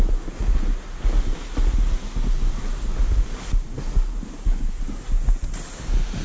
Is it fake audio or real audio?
real